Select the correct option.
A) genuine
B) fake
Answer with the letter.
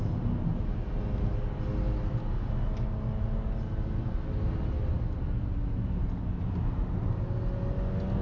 A